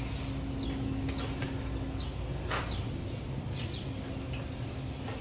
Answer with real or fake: real